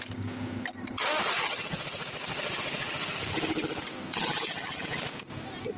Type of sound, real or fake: real